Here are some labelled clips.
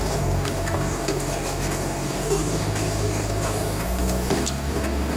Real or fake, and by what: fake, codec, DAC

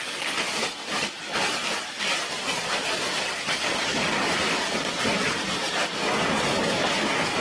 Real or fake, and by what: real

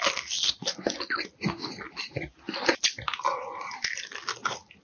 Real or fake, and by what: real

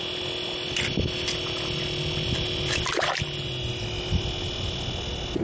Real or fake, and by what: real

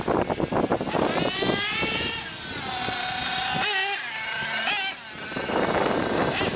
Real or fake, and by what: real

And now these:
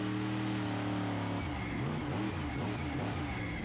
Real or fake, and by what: real